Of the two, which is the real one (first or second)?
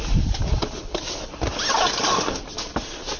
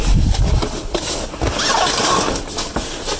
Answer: second